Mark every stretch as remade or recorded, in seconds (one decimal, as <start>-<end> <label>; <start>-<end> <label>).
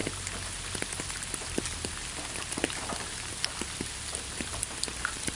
0.0-5.4 recorded